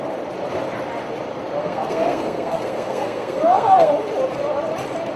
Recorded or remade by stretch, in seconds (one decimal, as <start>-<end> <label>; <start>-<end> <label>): 0.0-1.6 recorded; 1.6-3.9 remade; 3.9-5.2 recorded